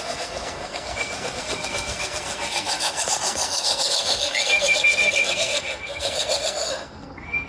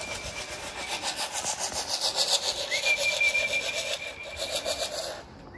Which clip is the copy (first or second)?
first